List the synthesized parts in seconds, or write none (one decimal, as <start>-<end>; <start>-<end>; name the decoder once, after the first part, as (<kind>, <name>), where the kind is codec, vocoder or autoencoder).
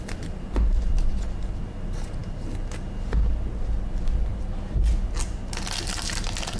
none